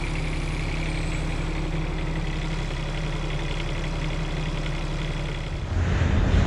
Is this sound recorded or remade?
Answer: recorded